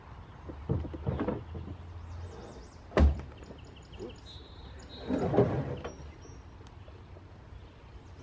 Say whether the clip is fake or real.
real